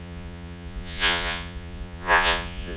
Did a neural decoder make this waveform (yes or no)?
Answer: yes